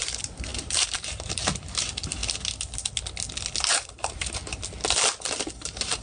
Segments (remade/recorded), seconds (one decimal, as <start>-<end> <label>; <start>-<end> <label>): 0.0-2.2 remade; 2.2-3.6 recorded; 3.6-4.4 remade; 4.4-5.3 recorded; 5.3-6.0 remade